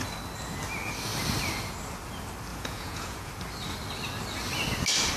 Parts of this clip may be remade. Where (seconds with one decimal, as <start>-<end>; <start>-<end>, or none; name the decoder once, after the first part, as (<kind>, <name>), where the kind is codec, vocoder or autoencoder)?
2.5-3.3 (vocoder, Vocos)